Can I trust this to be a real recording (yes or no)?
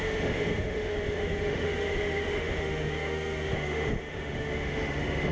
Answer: no